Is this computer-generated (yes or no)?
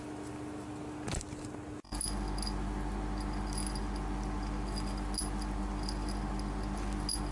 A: no